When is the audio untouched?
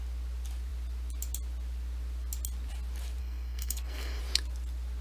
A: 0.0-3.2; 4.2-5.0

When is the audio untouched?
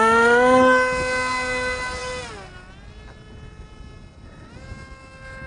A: 0.0-5.5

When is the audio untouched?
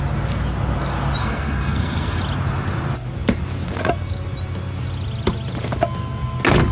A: 0.0-1.2; 2.2-6.7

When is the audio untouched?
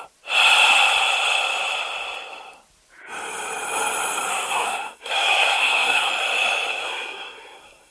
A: 0.0-4.3; 6.1-6.7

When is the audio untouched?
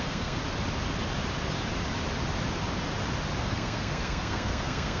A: 0.4-3.4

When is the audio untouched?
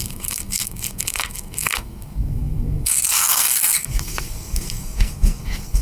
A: none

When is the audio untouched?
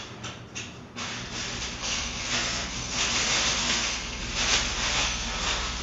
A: 0.0-1.8; 3.0-3.6; 4.2-4.9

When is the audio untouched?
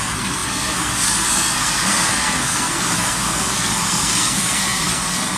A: none